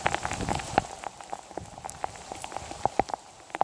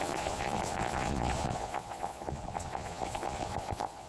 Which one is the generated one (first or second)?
second